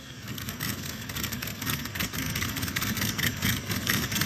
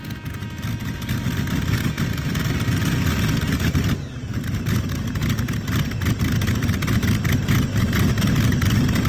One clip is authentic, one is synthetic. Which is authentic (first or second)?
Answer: second